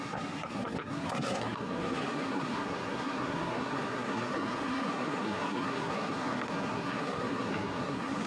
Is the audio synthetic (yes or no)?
yes